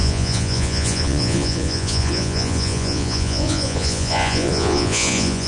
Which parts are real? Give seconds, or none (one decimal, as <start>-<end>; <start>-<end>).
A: none